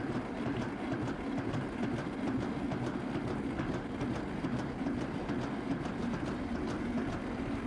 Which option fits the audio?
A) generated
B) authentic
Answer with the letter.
B